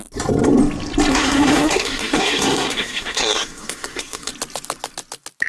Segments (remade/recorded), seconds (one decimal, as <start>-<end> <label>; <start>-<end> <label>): 0.0-1.1 recorded; 1.1-4.3 remade; 4.3-5.5 recorded